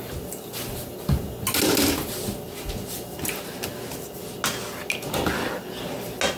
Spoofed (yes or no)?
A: no